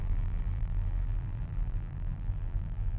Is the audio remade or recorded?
remade